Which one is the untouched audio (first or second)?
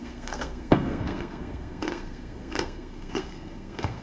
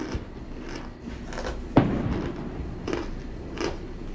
second